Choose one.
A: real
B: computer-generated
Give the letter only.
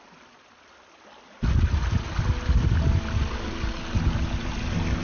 A